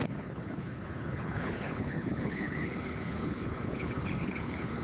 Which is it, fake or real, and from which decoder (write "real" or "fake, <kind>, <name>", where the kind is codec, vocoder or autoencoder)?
fake, codec, HILCodec